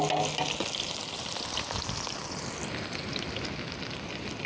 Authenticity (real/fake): real